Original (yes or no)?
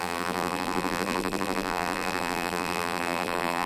no